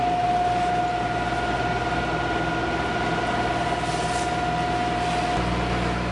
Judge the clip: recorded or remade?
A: recorded